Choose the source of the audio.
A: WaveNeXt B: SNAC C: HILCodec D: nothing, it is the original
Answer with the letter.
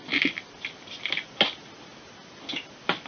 D